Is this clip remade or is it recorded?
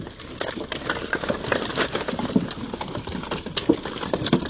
recorded